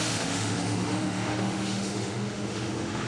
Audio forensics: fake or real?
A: fake